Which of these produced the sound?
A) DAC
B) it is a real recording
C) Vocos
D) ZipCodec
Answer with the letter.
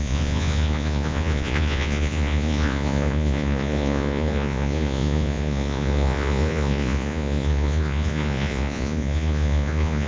C